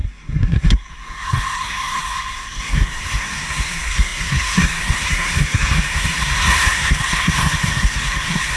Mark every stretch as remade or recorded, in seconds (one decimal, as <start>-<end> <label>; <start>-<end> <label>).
0.0-8.6 remade